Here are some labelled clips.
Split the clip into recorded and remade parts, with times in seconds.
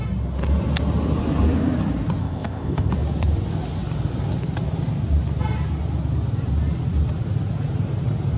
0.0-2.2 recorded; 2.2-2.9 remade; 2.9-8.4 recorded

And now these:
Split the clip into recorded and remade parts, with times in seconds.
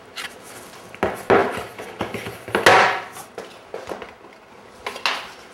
0.0-5.5 recorded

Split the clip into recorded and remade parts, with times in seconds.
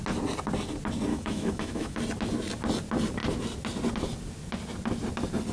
0.0-1.1 recorded; 1.1-2.0 remade; 2.0-5.5 recorded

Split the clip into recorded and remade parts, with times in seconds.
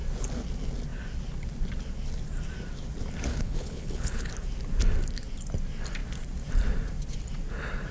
0.0-3.3 recorded; 3.3-4.3 remade; 4.3-7.9 recorded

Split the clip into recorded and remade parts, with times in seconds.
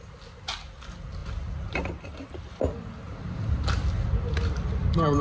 0.0-5.2 recorded